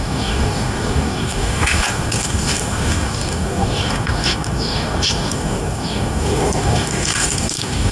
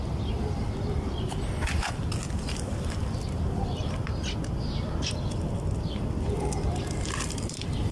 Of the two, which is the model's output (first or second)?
first